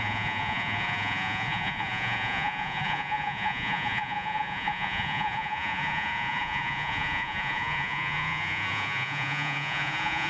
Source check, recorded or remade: remade